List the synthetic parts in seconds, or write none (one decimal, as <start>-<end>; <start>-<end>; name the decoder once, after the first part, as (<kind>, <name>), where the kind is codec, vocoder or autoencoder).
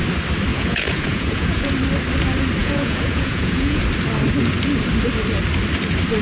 0.5-1.7 (vocoder, Vocos); 2.6-3.8